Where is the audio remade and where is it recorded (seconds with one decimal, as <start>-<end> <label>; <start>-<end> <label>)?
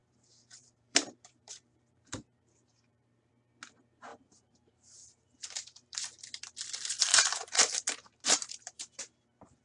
0.0-3.3 remade; 3.3-4.1 recorded; 4.1-6.0 remade; 6.0-7.1 recorded; 7.1-9.6 remade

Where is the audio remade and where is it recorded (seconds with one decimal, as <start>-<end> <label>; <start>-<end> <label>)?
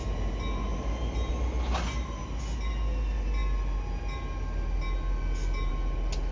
0.0-6.3 recorded